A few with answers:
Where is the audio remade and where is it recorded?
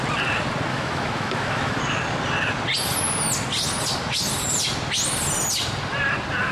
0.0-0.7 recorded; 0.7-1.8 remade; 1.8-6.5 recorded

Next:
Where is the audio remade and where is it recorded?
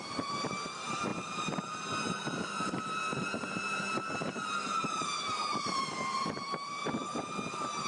0.0-7.0 remade; 7.0-7.5 recorded; 7.5-7.9 remade